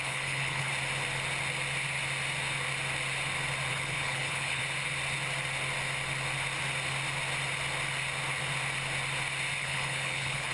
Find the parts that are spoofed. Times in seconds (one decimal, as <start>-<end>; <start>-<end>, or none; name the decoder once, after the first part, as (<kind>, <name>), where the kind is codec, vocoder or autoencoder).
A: 0.0-0.7 (codec, HILCodec); 3.7-4.6; 9.6-10.5

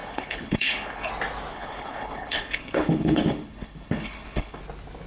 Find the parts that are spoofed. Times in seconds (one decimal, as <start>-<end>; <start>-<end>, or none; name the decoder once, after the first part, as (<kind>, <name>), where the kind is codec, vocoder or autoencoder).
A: 0.0-1.1 (codec, HILCodec); 1.5-4.6

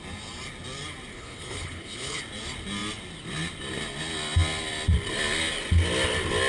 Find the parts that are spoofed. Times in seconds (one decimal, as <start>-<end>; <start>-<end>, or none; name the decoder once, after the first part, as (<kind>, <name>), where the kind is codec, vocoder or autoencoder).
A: 1.1-2.2 (codec, HILCodec)